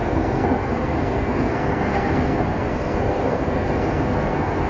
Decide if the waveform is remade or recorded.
remade